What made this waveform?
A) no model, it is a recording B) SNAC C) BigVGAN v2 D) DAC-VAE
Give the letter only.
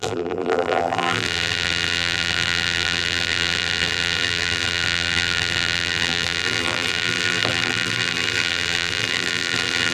C